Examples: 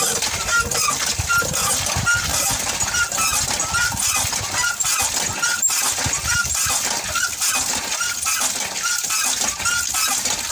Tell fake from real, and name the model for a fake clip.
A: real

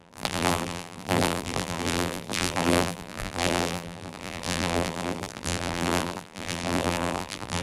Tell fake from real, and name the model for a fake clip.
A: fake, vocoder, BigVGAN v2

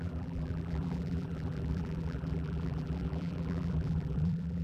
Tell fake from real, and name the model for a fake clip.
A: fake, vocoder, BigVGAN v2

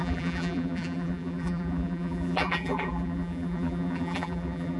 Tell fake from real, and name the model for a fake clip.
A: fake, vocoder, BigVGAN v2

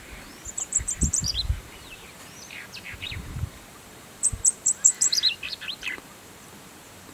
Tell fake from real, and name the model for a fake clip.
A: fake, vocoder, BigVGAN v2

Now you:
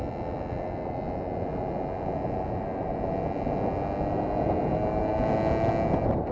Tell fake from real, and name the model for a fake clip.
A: real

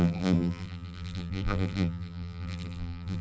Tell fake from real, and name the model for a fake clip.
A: fake, vocoder, BigVGAN v2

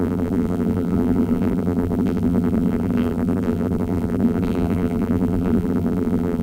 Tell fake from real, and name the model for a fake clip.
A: fake, vocoder, BigVGAN v2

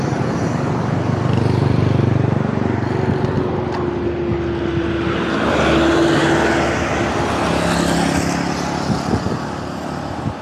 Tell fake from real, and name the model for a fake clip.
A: real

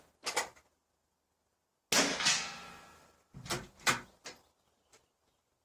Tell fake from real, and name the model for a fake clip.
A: real